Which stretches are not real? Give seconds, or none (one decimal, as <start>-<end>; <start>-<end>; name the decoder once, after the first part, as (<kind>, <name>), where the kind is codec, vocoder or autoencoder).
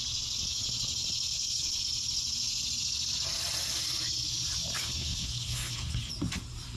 1.3-1.8 (codec, HILCodec); 4.8-6.1